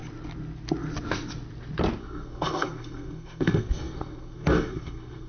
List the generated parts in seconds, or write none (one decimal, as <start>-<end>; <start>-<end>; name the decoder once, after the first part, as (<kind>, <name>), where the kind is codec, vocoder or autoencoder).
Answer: 2.0-5.3 (codec, SNAC)